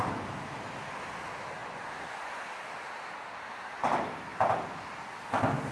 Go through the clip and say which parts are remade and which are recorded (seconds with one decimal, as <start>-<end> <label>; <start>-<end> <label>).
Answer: 0.0-1.6 recorded; 1.6-2.4 remade; 2.4-5.7 recorded

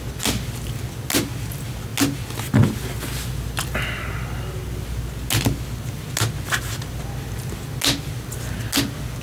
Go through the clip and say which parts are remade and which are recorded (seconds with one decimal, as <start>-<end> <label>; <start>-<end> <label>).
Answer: 0.0-9.2 recorded

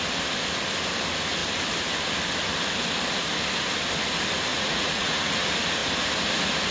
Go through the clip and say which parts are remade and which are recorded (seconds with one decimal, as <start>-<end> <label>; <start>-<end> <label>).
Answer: 0.0-4.5 recorded; 4.5-5.3 remade; 5.3-6.7 recorded

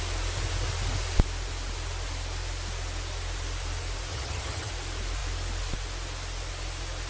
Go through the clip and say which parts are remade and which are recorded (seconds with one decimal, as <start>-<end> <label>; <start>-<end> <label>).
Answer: 0.0-4.1 recorded; 4.1-4.7 remade; 4.7-7.1 recorded

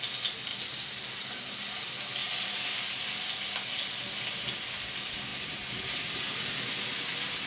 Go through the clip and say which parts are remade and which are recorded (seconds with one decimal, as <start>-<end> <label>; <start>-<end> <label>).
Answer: 0.0-7.5 recorded

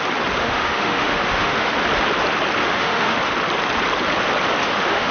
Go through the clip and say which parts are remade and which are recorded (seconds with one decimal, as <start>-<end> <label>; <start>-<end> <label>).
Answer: 0.0-0.4 recorded; 0.4-1.7 remade; 1.7-2.6 recorded; 2.6-3.2 remade; 3.2-4.6 recorded; 4.6-5.1 remade

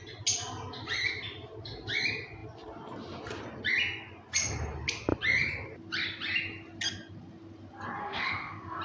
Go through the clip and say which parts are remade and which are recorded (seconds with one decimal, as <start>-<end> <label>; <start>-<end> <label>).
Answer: 0.0-8.0 recorded; 8.0-8.8 remade

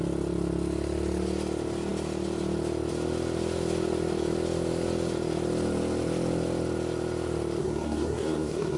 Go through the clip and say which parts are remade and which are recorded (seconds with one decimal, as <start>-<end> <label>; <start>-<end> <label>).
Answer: 0.0-7.6 recorded; 7.6-8.8 remade